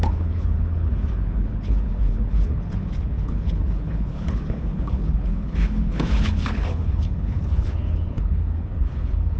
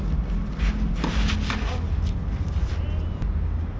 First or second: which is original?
second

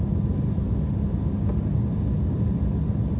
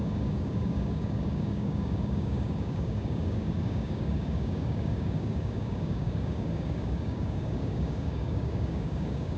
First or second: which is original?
first